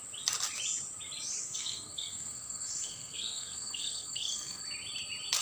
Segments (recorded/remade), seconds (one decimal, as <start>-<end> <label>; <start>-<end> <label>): 0.0-1.4 recorded; 1.4-4.6 remade; 4.6-5.4 recorded